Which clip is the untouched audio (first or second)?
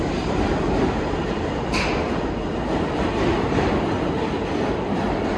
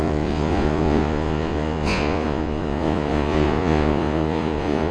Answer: first